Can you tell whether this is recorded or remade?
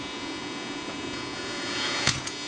remade